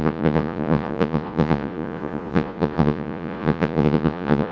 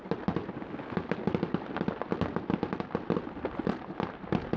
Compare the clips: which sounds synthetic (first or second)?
first